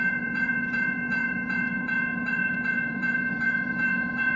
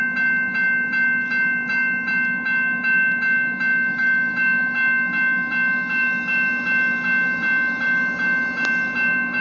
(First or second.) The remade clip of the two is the first